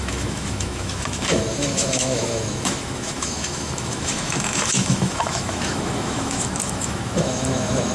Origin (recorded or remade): remade